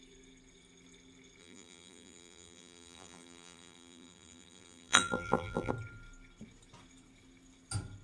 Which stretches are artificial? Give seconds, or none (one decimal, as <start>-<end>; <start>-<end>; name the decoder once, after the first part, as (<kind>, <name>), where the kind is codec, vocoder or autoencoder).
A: 1.4-5.7 (vocoder, BigVGAN v2)